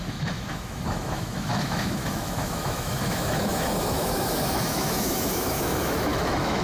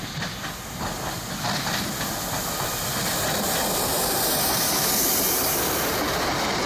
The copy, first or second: first